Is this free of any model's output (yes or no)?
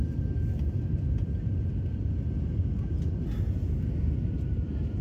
yes